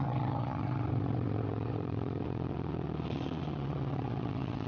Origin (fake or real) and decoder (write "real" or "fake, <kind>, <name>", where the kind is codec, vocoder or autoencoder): fake, vocoder, WaveNeXt